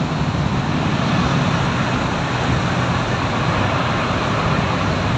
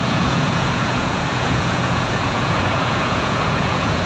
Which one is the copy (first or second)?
second